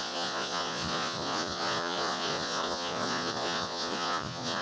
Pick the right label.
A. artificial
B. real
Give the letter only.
A